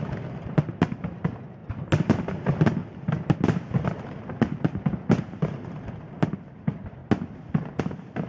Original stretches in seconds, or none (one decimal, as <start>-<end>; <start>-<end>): 0.0-8.3